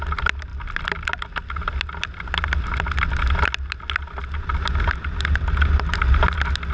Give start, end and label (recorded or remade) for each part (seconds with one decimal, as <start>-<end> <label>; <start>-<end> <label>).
0.0-6.7 recorded